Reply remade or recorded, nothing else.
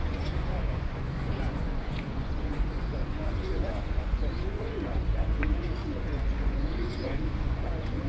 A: remade